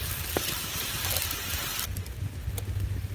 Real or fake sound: real